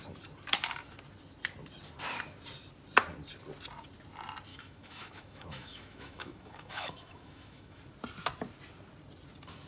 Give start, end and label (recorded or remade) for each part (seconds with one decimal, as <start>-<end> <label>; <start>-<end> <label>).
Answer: 0.0-4.5 recorded; 4.5-7.8 remade; 7.8-9.7 recorded